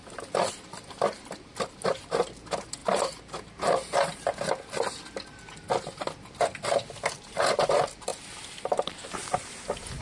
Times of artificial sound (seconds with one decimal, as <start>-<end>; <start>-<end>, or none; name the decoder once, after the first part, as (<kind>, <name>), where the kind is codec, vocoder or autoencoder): none